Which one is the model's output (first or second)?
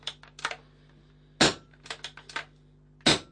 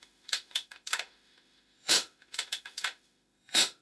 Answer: second